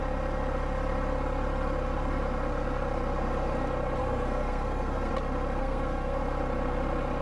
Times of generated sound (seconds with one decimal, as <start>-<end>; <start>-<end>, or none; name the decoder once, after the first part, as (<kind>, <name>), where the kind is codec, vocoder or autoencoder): 4.0-5.1 (codec, SNAC); 5.6-6.2